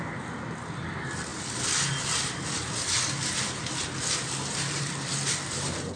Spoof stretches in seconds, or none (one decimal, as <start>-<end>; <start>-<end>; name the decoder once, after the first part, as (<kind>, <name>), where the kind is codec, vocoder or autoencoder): none